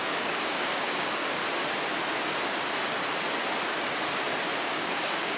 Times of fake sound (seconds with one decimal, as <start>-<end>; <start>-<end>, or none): 0.0-1.4; 4.6-5.4